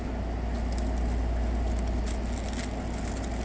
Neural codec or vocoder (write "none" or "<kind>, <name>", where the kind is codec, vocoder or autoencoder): none